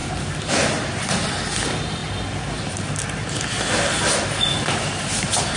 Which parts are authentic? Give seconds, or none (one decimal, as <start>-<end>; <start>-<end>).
0.0-5.6